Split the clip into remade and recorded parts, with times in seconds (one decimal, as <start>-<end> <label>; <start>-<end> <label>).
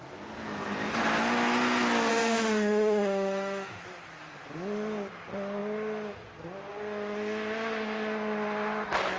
0.0-2.1 recorded; 2.1-3.8 remade; 3.8-9.2 recorded